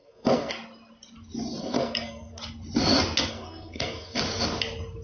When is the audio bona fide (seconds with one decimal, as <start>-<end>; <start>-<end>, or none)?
0.5-1.6; 2.4-3.3; 4.2-5.0